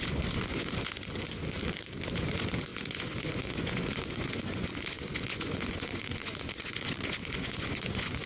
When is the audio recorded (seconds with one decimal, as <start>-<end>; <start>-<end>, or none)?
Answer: 1.4-2.1